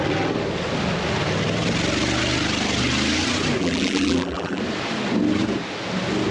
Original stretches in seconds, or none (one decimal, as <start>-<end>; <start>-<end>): 0.0-3.6; 4.6-6.3

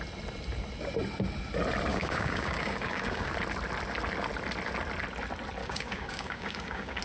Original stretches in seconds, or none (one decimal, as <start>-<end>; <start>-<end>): 0.0-1.9; 3.3-5.6

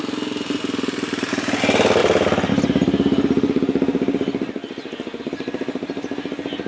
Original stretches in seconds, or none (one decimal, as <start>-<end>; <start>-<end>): 0.0-2.0; 2.5-4.6; 5.2-6.7